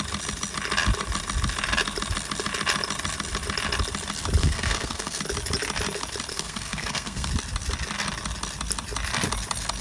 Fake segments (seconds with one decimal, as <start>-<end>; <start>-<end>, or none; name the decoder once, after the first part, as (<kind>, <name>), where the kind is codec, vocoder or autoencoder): 4.4-5.2 (codec, SNAC); 6.3-7.3